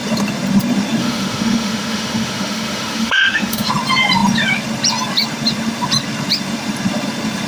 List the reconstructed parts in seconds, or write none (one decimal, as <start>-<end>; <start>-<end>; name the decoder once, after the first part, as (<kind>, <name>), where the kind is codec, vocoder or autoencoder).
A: 1.0-3.7 (autoencoder, DAC-VAE)